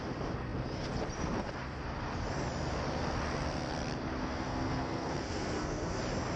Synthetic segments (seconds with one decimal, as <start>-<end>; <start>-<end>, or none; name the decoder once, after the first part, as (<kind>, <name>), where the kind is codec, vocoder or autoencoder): 4.2-6.0 (codec, SNAC)